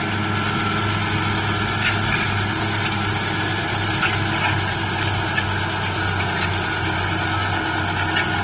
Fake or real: real